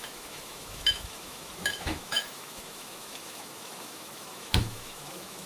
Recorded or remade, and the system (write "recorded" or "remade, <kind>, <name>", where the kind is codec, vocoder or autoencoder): remade, autoencoder, DAC-VAE